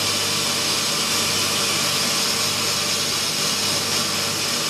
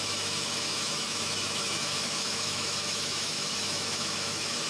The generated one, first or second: second